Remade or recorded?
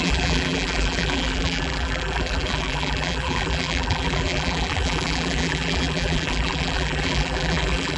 remade